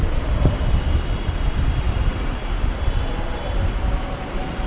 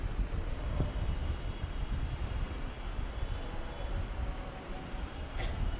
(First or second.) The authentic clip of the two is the second